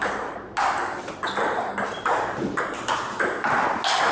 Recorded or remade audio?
recorded